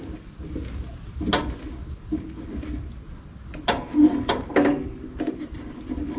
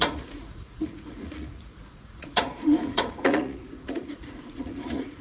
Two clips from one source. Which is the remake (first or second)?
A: second